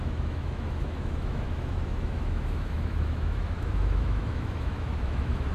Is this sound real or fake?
fake